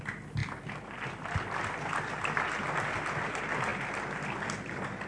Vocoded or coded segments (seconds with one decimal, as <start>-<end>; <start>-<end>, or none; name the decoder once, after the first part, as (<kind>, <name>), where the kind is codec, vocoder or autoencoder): none